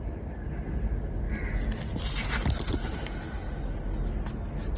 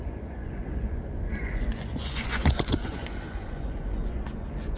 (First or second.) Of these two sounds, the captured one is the first